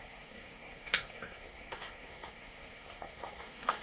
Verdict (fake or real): fake